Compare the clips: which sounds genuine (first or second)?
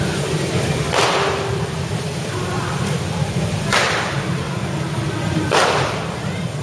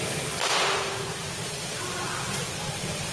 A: second